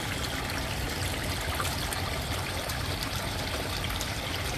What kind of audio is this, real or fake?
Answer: real